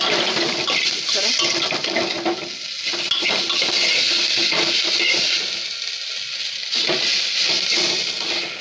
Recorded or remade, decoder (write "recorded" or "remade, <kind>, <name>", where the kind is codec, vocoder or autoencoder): recorded